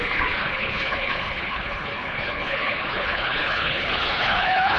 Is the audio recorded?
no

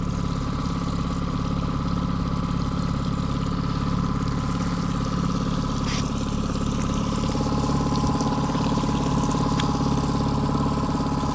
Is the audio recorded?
yes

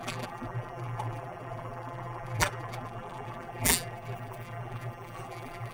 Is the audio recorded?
no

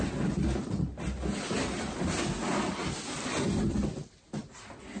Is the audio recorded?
yes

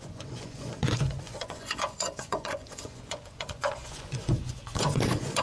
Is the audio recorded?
no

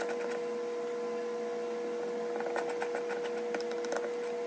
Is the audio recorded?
yes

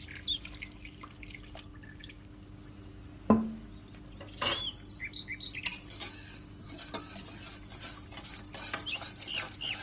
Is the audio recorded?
yes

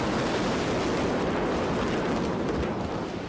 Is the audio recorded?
yes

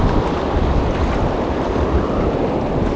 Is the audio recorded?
yes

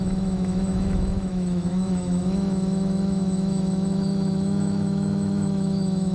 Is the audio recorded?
no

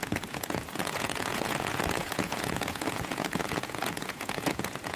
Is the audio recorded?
no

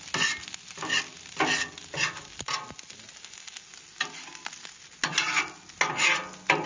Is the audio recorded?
yes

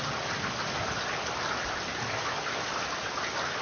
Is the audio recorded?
yes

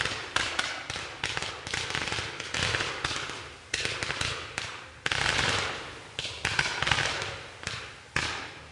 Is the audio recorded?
yes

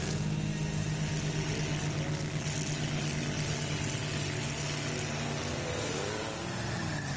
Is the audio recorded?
yes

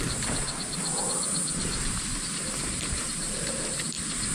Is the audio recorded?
no